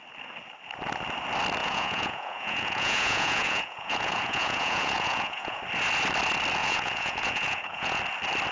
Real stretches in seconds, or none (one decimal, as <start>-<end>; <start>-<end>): 0.0-1.6; 5.6-6.6; 8.0-8.5